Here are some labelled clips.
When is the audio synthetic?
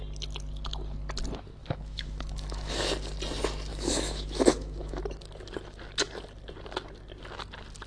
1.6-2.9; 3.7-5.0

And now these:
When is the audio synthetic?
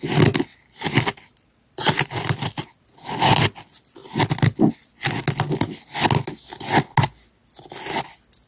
0.5-1.9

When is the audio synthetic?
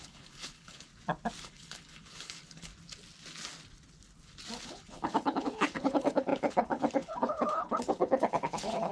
0.0-0.9; 1.4-2.7; 4.6-8.9